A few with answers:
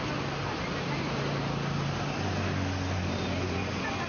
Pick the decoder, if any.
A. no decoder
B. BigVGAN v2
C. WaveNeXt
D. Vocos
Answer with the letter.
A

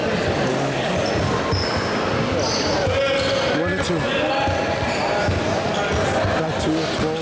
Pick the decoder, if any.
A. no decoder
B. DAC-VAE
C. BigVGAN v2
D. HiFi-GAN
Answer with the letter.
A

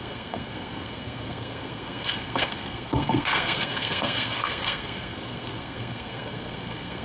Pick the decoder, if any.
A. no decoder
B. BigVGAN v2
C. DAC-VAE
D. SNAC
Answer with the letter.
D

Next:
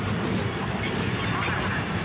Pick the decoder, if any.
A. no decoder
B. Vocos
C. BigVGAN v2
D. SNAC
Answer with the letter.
A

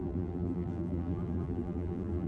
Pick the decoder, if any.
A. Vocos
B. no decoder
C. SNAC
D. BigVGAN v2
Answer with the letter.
D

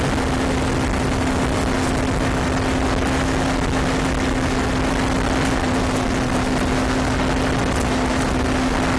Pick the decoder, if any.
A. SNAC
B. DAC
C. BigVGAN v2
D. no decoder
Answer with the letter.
D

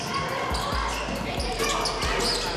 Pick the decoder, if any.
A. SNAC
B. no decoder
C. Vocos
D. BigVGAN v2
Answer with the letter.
B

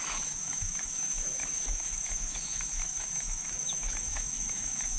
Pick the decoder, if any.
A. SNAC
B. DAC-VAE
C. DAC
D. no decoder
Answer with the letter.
B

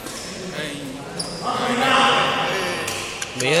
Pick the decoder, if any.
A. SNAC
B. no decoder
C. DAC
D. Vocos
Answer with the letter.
B